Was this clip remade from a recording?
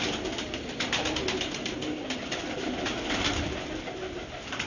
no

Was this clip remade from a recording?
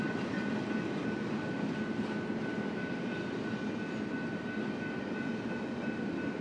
no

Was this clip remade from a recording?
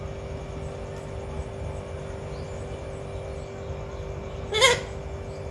no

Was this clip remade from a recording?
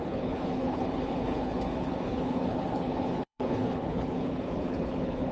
yes